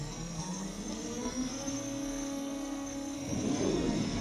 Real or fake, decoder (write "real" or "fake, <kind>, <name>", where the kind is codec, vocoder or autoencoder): fake, codec, SNAC